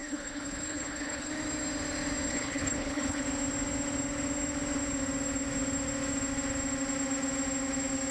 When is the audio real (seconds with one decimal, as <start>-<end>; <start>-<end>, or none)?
1.3-2.3; 3.2-8.1